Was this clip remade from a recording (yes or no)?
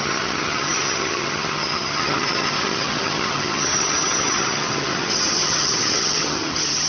yes